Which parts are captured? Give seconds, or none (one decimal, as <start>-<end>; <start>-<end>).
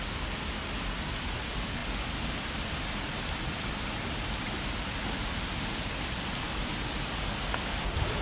0.0-8.2